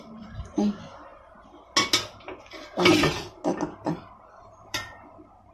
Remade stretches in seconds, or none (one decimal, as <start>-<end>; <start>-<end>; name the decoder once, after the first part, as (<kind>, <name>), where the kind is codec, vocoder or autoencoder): 0.0-1.1 (vocoder, BigVGAN v2); 4.4-5.5